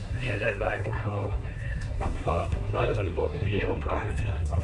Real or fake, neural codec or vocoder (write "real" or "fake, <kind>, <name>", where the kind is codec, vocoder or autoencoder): fake, codec, SNAC